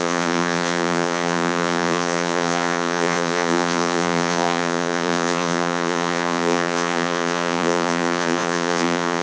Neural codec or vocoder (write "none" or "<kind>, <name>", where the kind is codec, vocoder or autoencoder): vocoder, Vocos